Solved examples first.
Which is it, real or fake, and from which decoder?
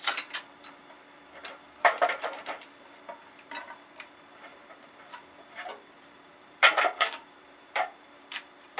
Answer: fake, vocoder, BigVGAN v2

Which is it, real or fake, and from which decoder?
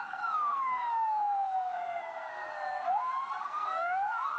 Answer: fake, codec, SNAC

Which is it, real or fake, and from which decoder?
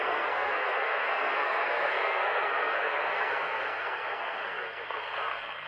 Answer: fake, codec, SNAC